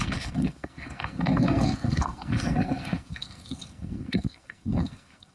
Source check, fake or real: fake